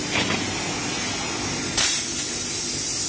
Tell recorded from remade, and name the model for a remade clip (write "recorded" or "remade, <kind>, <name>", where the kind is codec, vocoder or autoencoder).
recorded